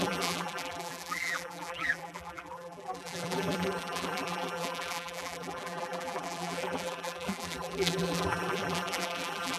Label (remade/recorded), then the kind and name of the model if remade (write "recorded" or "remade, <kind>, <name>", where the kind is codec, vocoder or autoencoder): remade, vocoder, BigVGAN v2